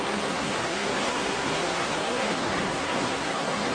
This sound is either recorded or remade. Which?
remade